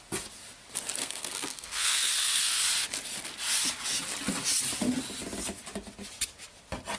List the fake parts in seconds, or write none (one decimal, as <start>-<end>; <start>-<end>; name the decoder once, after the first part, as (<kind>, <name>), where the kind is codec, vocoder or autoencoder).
1.0-2.6 (codec, SNAC)